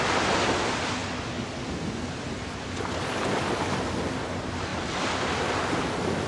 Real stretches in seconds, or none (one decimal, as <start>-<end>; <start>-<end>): 0.0-4.7; 5.4-6.3